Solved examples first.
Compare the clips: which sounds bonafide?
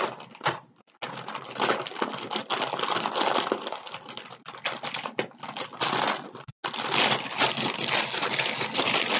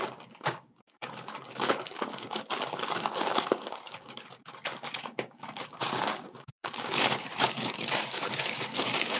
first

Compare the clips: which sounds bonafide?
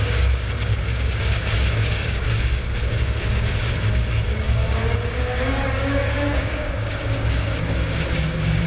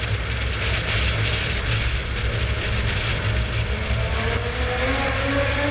second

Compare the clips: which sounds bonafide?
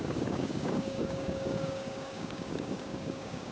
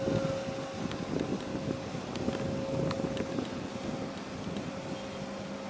second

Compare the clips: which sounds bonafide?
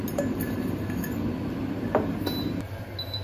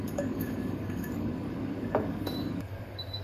first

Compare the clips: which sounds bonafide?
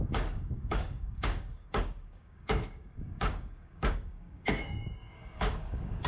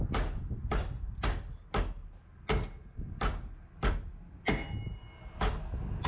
second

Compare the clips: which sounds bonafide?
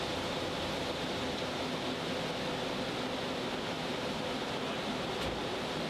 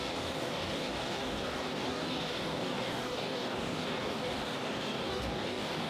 first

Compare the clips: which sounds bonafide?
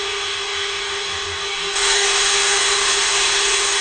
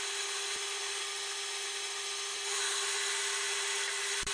second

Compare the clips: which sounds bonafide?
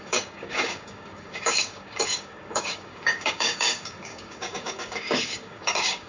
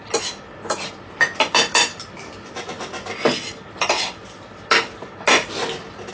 second